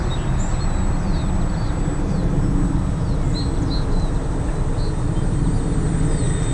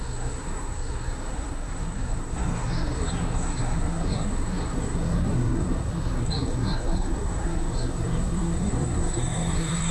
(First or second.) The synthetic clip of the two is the second